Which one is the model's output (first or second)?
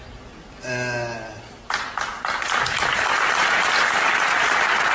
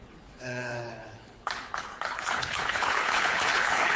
second